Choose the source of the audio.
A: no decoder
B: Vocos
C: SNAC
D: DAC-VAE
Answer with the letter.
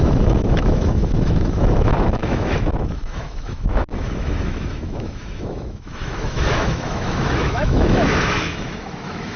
D